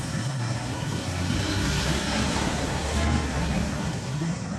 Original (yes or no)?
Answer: no